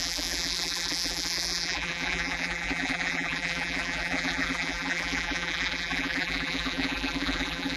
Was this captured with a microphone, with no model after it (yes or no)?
no